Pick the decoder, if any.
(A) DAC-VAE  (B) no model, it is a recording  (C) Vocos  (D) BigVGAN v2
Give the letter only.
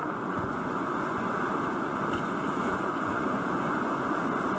C